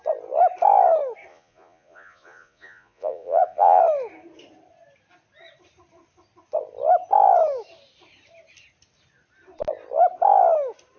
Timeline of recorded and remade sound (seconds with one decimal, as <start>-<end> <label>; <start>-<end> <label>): 0.0-1.3 recorded; 1.3-3.8 remade; 3.8-11.0 recorded